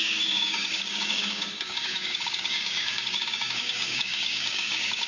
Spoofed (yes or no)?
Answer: yes